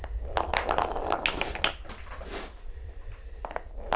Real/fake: real